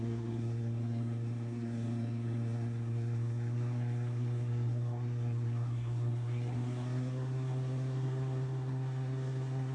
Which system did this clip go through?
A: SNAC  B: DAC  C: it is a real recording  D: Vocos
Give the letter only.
A